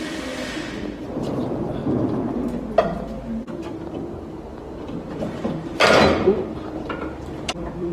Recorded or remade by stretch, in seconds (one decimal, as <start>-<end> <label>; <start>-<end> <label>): 0.0-1.8 remade; 1.8-4.8 recorded; 4.8-7.9 remade